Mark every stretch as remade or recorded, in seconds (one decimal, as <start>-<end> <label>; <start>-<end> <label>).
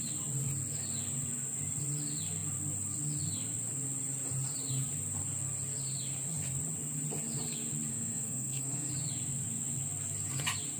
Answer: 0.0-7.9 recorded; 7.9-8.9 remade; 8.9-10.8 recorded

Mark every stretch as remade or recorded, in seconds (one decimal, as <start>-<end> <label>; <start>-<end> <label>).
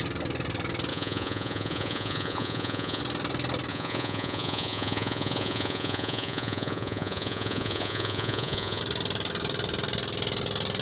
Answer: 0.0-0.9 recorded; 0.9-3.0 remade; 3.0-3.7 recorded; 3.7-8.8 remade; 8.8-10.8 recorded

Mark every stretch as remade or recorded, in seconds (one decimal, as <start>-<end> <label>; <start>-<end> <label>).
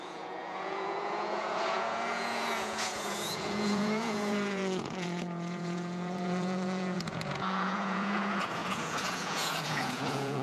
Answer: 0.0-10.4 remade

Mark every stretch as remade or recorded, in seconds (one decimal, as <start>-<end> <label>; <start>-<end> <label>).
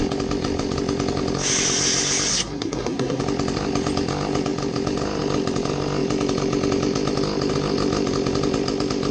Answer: 0.0-2.3 recorded; 2.3-3.2 remade; 3.2-9.1 recorded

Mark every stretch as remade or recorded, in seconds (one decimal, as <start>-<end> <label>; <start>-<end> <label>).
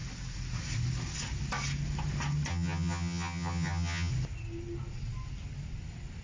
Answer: 0.0-2.5 recorded; 2.5-4.1 remade; 4.1-6.2 recorded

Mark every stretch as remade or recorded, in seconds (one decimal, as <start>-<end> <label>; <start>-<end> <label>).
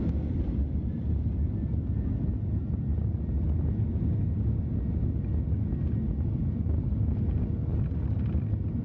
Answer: 0.0-8.8 recorded